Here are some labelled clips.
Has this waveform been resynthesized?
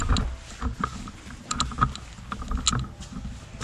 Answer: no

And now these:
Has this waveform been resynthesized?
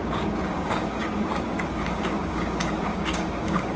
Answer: yes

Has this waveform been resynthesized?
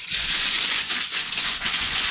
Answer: yes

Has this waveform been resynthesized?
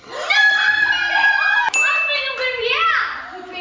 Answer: no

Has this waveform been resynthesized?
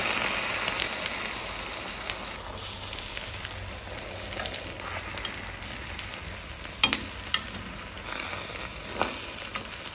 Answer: no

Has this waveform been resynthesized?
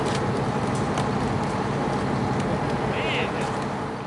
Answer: no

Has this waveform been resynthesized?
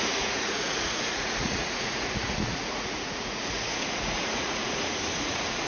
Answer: yes